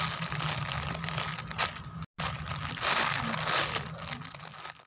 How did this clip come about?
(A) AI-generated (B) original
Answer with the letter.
B